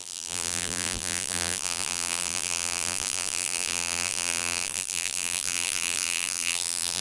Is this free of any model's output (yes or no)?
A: no